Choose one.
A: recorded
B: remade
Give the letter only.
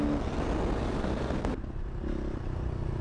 A